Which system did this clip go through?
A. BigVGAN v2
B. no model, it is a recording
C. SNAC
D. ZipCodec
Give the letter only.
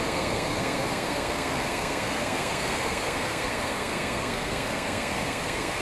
C